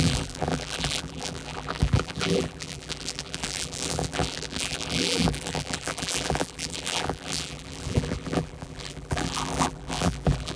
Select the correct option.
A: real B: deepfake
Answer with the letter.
B